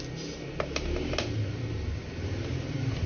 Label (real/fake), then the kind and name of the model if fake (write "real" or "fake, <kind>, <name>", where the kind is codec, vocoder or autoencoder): real